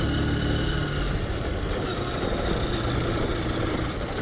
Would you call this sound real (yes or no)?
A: yes